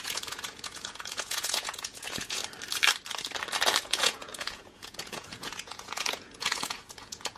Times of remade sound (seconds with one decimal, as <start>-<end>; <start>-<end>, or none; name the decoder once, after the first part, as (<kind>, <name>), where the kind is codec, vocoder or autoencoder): 0.0-2.4 (vocoder, Vocos); 3.8-7.4